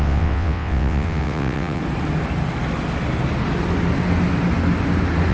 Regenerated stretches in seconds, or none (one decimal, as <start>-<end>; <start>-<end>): 0.0-1.8